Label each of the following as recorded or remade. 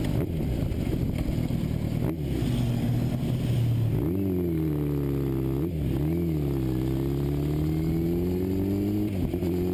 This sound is recorded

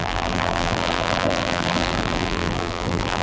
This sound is remade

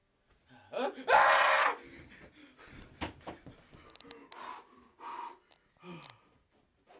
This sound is recorded